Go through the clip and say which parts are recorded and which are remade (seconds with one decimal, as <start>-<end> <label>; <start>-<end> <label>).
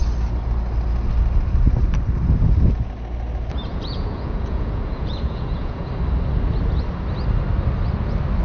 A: 0.0-3.7 recorded; 3.7-5.9 remade; 5.9-8.4 recorded